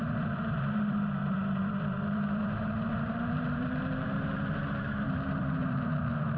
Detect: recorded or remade remade